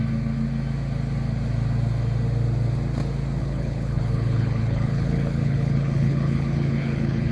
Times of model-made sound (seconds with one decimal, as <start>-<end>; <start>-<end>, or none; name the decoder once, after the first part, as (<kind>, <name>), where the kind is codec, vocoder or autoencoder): 3.4-7.3 (codec, HILCodec)